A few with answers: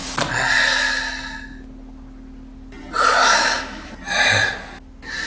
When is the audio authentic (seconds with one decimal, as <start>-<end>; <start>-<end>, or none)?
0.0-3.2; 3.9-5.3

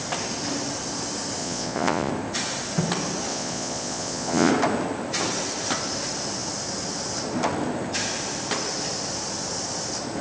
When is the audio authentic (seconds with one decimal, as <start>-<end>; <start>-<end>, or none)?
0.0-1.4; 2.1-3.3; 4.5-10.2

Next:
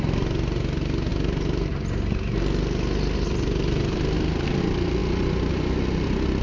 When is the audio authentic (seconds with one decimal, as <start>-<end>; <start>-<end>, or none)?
0.0-6.4

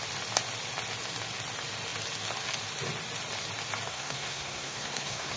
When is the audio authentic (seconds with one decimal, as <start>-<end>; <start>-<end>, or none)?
0.0-3.9

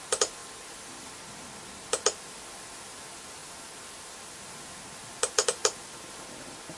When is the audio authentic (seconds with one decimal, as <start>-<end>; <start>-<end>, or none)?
0.0-0.4; 1.9-6.8